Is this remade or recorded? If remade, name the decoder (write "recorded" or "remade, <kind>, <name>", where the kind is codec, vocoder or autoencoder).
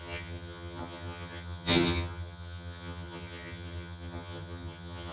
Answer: remade, vocoder, HiFi-GAN